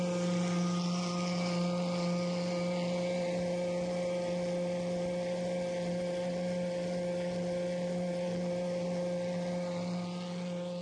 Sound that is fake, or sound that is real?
real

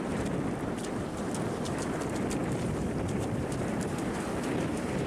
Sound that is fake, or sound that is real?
fake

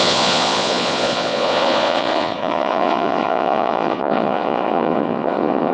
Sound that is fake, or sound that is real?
fake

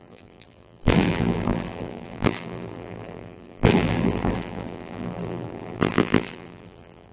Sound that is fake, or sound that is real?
fake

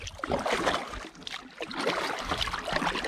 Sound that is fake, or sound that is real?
real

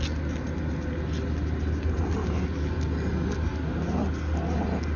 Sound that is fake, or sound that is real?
real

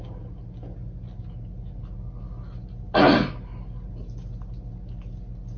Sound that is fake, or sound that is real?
real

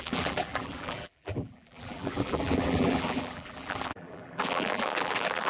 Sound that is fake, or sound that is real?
fake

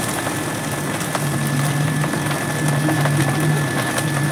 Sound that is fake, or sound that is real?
real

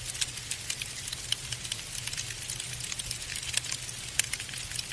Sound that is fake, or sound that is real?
real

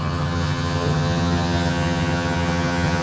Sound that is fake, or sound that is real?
fake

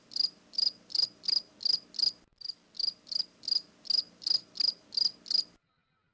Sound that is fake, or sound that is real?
real